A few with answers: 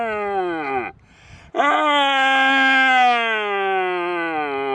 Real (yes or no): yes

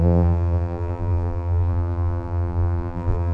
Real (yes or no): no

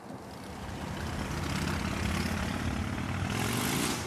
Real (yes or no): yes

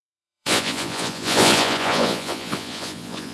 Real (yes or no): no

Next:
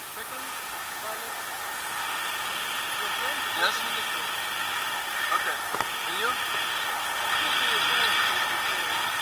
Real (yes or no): yes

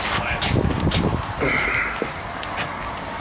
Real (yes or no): yes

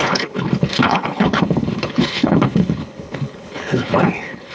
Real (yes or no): no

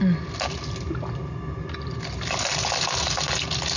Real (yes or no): yes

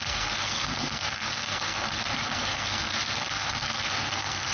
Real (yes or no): no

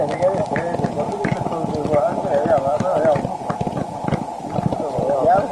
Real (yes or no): yes